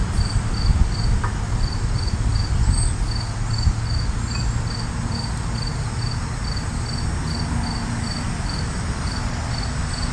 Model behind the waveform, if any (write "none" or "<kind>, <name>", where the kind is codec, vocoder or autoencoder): none